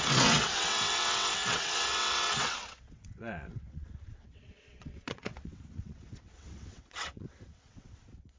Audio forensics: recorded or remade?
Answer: remade